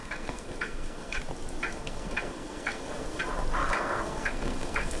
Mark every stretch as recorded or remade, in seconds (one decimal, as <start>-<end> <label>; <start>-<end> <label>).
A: 0.0-1.2 remade; 1.2-1.7 recorded; 1.7-3.2 remade; 3.2-3.6 recorded; 3.6-5.0 remade

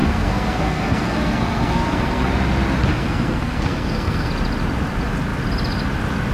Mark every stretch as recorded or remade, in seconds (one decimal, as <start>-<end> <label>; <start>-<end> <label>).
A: 0.0-2.3 remade; 2.3-2.9 recorded; 2.9-4.3 remade; 4.3-6.3 recorded

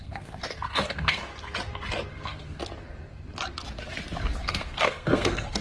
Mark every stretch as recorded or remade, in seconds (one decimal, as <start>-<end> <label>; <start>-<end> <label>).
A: 0.0-1.2 remade; 1.2-2.1 recorded; 2.1-2.6 remade; 2.6-4.4 recorded; 4.4-5.6 remade

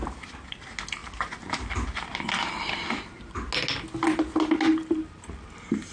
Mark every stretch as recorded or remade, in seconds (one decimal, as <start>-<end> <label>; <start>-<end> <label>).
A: 0.0-5.9 recorded

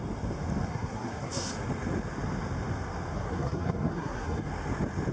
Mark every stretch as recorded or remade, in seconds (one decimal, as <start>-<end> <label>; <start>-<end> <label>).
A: 0.0-0.6 recorded; 0.6-1.5 remade; 1.5-3.1 recorded; 3.1-4.5 remade; 4.5-5.1 recorded